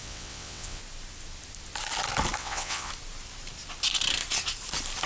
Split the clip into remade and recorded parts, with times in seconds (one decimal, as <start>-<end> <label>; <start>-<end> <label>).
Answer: 0.0-0.8 remade; 0.8-2.4 recorded; 2.4-2.9 remade; 2.9-5.1 recorded